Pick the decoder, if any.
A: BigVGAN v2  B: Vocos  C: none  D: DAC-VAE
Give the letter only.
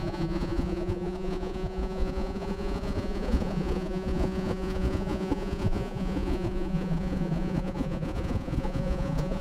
B